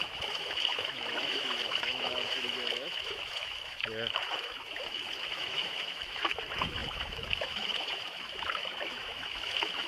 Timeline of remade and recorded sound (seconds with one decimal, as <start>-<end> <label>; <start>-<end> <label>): 0.0-9.9 remade